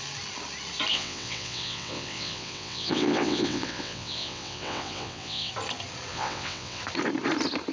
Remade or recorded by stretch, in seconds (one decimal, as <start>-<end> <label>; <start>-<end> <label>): 0.0-0.9 recorded; 0.9-5.5 remade; 5.5-6.1 recorded; 6.1-6.8 remade; 6.8-7.7 recorded